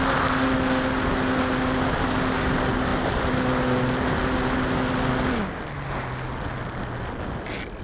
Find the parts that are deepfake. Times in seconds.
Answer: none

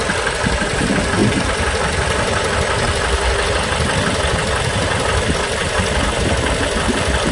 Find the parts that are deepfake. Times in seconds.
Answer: none

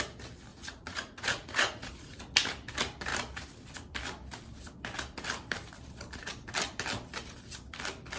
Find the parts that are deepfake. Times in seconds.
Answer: 0.5-2.2

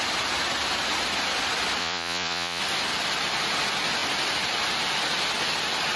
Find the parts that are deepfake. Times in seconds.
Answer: 1.8-2.6

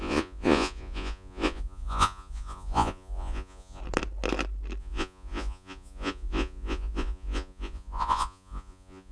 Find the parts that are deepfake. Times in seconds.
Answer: 0.0-3.8; 4.8-9.1